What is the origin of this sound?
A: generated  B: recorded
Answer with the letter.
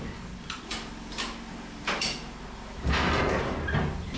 B